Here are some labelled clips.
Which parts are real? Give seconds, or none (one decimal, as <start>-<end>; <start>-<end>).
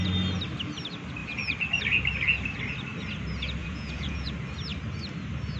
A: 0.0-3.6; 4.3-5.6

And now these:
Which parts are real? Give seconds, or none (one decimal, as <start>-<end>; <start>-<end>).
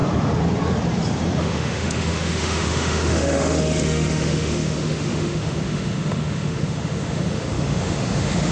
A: 0.0-1.4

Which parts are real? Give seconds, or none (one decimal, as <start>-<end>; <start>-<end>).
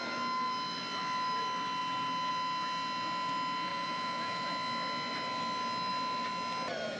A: 0.0-3.7; 4.5-7.0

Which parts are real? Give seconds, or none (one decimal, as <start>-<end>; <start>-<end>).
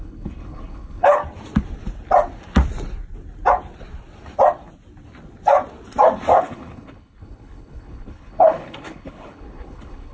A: 1.2-6.4